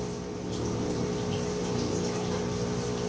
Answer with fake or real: real